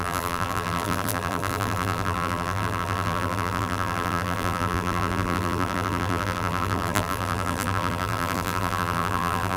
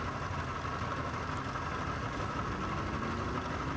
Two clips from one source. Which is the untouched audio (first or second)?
second